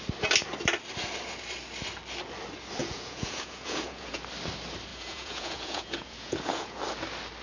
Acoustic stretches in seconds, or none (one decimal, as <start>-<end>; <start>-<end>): 0.0-2.8; 4.2-4.9; 6.8-7.4